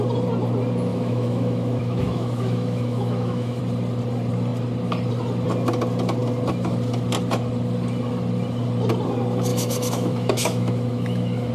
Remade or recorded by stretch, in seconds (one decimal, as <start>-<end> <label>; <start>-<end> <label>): 0.0-0.9 recorded; 0.9-3.6 remade; 3.6-9.5 recorded; 9.5-11.5 remade